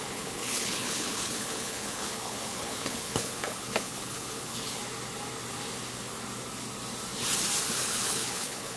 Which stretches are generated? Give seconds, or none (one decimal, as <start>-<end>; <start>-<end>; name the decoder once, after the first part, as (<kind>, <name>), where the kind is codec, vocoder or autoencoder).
0.0-4.8 (codec, HILCodec); 7.7-8.8